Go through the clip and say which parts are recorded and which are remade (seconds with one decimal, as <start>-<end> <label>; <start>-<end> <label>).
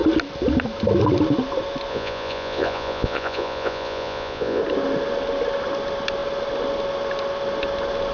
0.0-1.9 recorded; 1.9-4.6 remade; 4.6-8.1 recorded